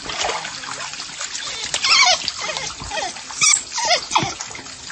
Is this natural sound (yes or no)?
yes